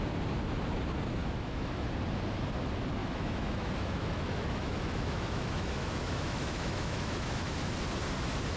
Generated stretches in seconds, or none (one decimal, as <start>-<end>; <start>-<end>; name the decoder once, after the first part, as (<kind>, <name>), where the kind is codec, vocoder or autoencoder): 1.2-1.9 (autoencoder, DAC-VAE); 3.0-7.7